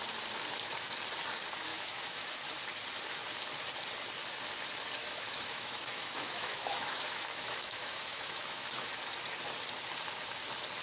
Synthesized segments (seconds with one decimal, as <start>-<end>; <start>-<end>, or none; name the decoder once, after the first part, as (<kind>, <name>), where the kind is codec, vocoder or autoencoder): 1.7-2.3 (autoencoder, DAC-VAE); 5.0-8.9